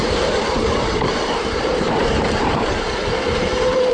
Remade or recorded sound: remade